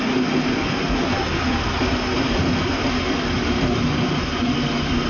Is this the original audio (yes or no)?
yes